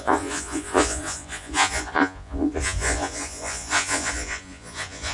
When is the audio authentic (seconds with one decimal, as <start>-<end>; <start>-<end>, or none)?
none